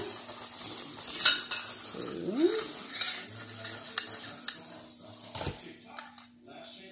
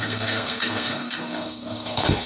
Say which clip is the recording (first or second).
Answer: first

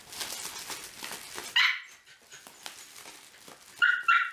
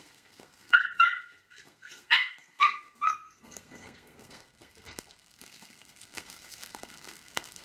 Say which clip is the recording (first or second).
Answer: first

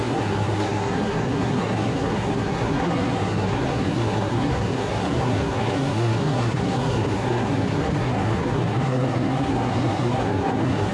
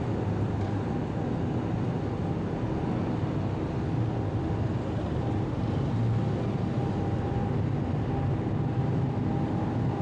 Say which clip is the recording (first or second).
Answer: second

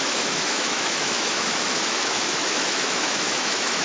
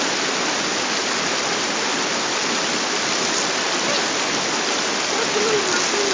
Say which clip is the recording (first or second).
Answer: second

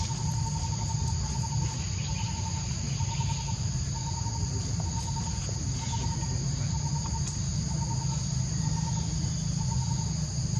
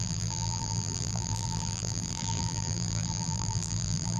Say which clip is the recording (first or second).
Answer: first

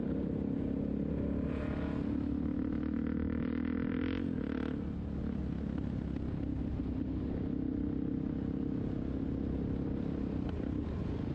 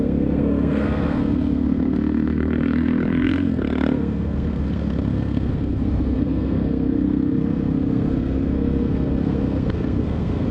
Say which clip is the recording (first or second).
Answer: first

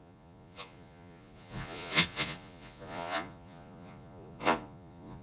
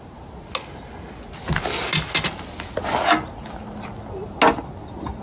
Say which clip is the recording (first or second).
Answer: second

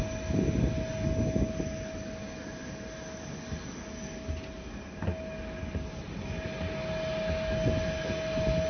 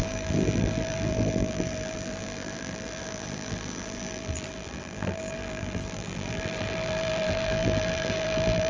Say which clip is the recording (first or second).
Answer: first